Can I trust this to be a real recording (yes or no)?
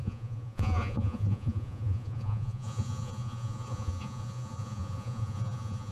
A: no